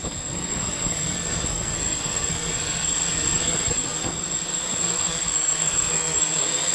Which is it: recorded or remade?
remade